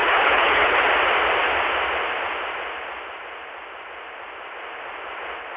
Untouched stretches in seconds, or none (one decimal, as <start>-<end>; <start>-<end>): 0.8-5.6